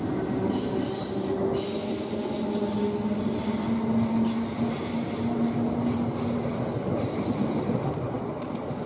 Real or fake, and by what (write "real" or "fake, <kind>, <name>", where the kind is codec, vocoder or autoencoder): real